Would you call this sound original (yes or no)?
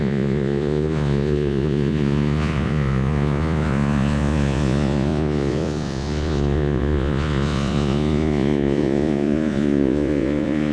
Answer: no